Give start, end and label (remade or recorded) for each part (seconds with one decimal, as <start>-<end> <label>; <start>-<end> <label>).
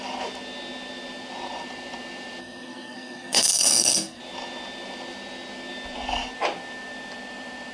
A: 0.0-2.4 recorded; 2.4-4.2 remade; 4.2-7.7 recorded